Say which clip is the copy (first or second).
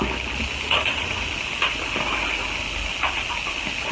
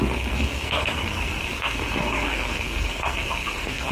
second